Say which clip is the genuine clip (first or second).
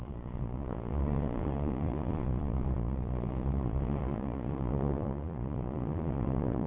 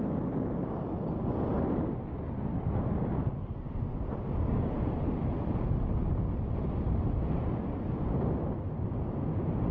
second